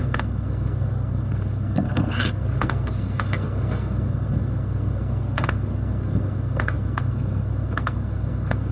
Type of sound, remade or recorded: remade